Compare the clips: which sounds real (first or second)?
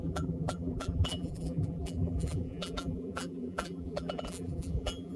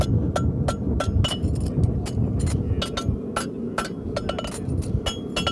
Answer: second